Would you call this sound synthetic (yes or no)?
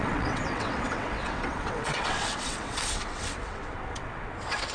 yes